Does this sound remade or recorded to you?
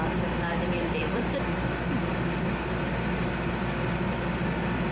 recorded